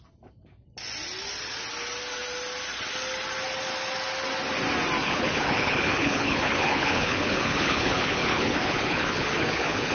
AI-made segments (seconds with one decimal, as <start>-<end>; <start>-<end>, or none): 5.0-9.9

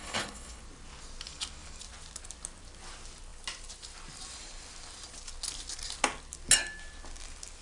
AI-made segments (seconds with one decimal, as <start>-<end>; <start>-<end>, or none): 0.0-0.6

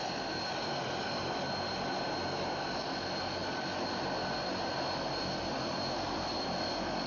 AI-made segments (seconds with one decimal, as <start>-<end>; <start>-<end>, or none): none

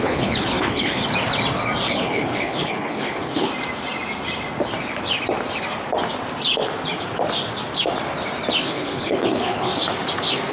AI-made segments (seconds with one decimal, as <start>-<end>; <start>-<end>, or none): 0.0-1.0; 1.9-3.5; 8.6-9.7

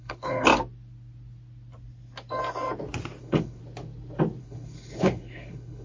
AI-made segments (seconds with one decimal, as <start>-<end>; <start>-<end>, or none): 0.0-0.5; 3.2-3.6; 4.4-5.8